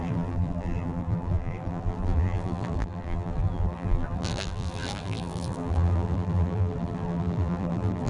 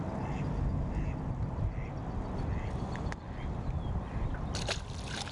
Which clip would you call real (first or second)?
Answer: second